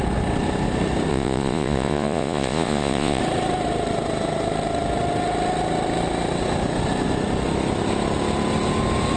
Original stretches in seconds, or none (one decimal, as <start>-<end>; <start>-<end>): 0.0-1.1; 3.2-9.2

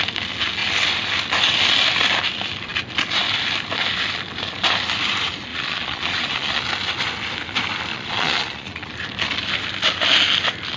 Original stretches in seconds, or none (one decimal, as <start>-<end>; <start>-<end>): 0.0-5.5; 6.6-7.9; 8.9-10.8

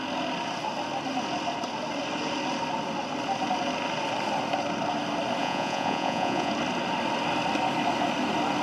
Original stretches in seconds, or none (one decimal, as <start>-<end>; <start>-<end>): 0.0-5.4; 6.5-8.6

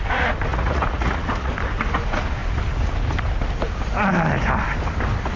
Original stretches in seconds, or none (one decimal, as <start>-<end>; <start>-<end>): 0.0-0.5; 1.5-5.4